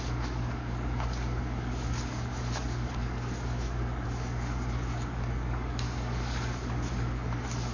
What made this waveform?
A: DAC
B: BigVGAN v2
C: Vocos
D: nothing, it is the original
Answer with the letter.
A